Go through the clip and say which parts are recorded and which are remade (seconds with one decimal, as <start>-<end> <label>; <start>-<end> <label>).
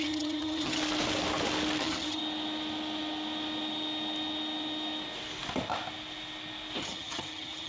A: 0.0-0.8 remade; 0.8-1.8 recorded; 1.8-2.2 remade; 2.2-6.8 recorded; 6.8-7.7 remade